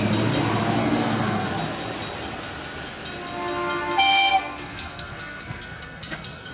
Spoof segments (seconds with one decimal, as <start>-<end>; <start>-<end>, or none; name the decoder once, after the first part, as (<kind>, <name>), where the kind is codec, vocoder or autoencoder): 0.8-1.5 (codec, SNAC); 4.3-6.5